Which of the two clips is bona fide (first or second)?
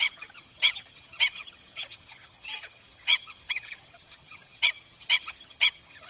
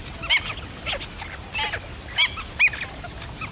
second